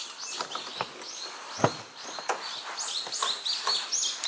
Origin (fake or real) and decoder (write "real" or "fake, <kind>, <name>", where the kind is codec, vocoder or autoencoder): real